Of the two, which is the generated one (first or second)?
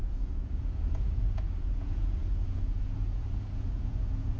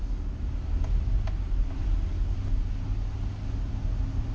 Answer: first